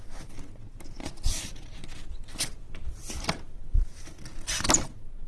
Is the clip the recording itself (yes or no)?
yes